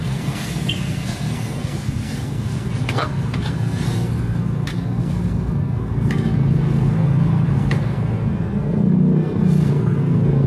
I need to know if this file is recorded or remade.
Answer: remade